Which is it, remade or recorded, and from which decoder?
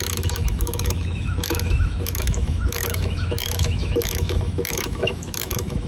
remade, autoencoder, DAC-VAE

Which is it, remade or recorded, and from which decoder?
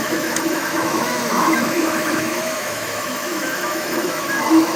remade, autoencoder, DAC-VAE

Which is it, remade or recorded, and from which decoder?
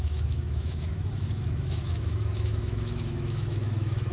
remade, autoencoder, DAC-VAE